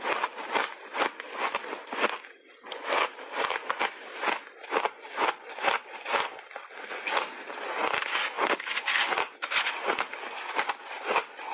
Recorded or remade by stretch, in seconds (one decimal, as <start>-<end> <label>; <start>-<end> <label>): 0.0-11.5 recorded